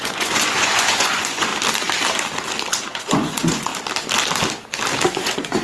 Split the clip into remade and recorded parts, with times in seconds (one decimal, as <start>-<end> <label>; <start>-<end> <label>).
0.0-1.5 remade; 1.5-2.7 recorded; 2.7-3.7 remade; 3.7-5.1 recorded; 5.1-5.6 remade